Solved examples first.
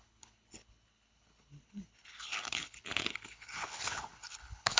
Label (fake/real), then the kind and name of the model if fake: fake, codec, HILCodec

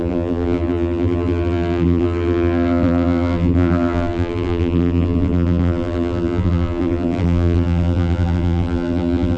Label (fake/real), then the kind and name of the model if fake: fake, vocoder, BigVGAN v2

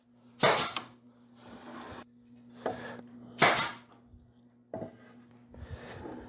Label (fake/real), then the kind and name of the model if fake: real